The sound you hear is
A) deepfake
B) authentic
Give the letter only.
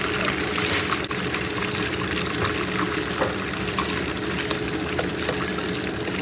B